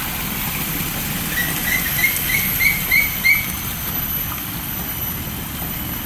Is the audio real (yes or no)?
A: yes